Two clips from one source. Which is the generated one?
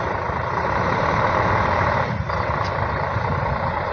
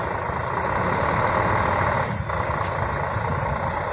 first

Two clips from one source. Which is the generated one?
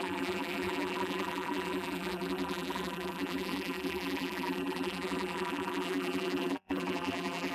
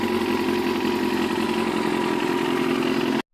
first